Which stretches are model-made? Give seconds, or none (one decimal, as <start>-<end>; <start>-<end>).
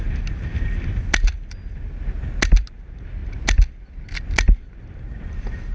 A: none